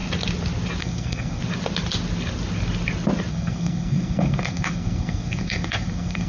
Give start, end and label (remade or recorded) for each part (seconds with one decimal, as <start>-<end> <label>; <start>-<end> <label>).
0.0-0.8 recorded; 0.8-1.4 remade; 1.4-3.3 recorded; 3.3-6.3 remade